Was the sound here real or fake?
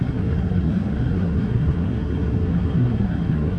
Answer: fake